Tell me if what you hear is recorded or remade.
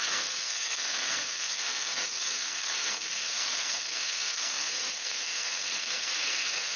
remade